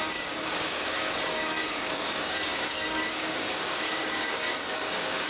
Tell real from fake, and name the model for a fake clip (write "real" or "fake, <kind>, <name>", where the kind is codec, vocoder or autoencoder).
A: fake, codec, DAC